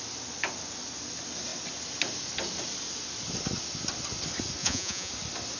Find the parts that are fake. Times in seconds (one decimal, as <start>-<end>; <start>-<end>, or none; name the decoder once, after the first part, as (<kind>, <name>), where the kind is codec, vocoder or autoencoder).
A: 4.6-5.1 (vocoder, Vocos)